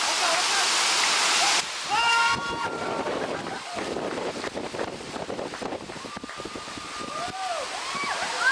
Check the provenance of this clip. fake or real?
real